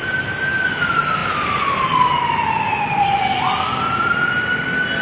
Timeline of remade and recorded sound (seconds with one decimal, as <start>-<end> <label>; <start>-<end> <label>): 0.0-5.0 recorded